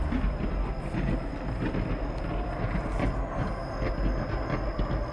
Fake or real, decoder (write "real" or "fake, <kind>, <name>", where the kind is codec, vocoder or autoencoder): real